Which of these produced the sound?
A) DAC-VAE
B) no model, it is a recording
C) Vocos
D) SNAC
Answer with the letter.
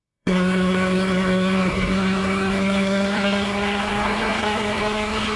D